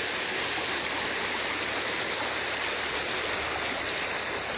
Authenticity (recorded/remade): recorded